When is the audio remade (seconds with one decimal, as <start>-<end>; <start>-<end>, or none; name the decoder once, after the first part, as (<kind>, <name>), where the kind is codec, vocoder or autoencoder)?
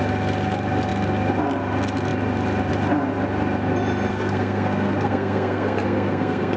4.1-6.6 (codec, SNAC)